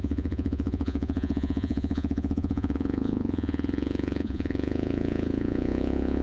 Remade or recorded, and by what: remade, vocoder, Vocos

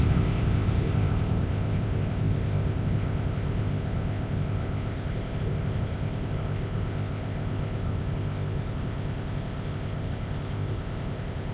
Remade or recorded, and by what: remade, codec, ZipCodec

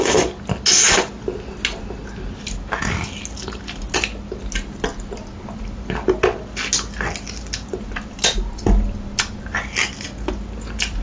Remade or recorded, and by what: recorded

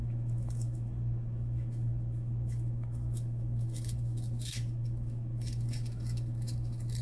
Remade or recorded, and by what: remade, autoencoder, DAC-VAE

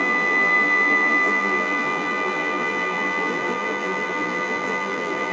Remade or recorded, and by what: remade, vocoder, BigVGAN v2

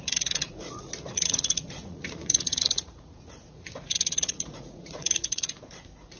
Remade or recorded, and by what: remade, vocoder, Vocos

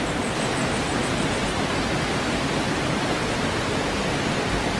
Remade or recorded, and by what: recorded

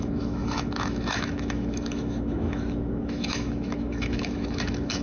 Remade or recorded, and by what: remade, autoencoder, DAC-VAE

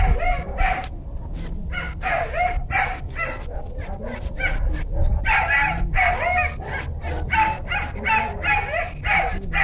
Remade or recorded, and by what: recorded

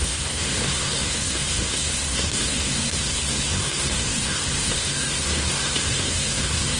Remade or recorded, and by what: remade, codec, SNAC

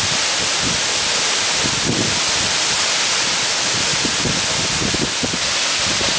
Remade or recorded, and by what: recorded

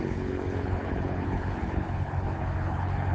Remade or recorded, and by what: remade, codec, HILCodec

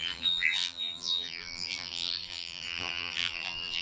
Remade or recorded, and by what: remade, vocoder, BigVGAN v2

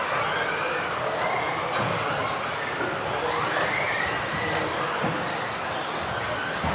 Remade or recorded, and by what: recorded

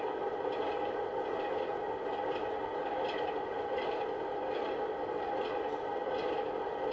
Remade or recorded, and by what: recorded